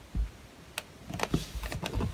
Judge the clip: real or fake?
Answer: real